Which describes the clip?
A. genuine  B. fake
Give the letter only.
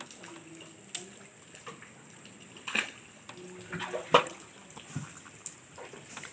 A